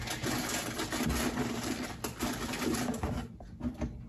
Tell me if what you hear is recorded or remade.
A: recorded